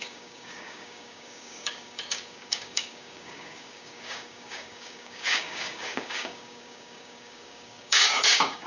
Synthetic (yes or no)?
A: yes